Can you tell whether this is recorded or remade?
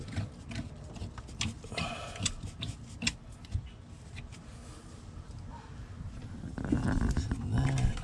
recorded